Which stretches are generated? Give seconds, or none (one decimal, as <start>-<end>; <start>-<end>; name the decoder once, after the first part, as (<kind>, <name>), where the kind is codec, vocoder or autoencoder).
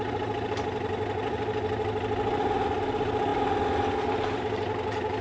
none